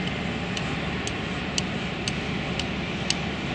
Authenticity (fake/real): real